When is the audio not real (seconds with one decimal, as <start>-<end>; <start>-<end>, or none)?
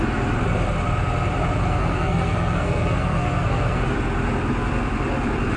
1.6-3.8